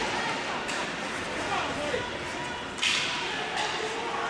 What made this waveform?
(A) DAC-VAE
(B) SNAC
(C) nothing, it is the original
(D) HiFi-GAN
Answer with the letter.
C